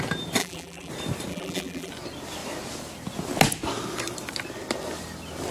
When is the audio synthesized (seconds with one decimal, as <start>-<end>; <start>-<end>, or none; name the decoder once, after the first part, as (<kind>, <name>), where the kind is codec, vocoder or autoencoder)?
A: 0.4-0.9 (vocoder, BigVGAN v2); 1.3-1.9